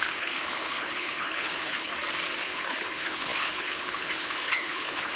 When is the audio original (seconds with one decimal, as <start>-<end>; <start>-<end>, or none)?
1.9-2.4